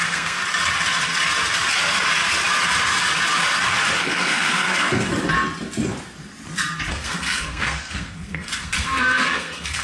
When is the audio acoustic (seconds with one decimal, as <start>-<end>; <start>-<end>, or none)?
0.4-4.0; 5.1-6.9